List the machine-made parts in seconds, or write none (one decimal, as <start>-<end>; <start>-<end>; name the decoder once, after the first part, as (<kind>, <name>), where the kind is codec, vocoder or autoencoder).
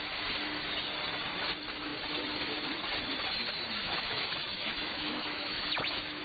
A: 3.8-6.2 (autoencoder, DAC-VAE)